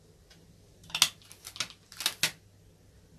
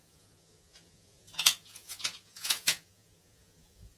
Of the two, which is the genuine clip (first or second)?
first